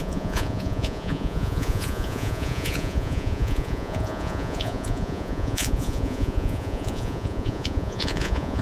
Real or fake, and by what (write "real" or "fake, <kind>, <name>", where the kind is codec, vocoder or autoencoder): fake, vocoder, Vocos